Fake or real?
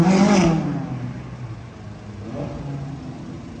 real